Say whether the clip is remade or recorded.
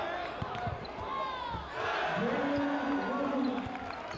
recorded